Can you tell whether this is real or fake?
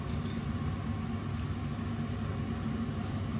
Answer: real